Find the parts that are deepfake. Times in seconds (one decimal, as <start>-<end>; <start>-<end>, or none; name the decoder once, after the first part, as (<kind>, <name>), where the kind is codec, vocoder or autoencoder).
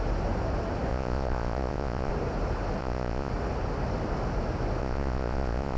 0.9-2.1 (vocoder, Vocos); 2.8-3.3; 4.8-5.8